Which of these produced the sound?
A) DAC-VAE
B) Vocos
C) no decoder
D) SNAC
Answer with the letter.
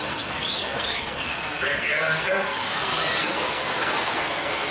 D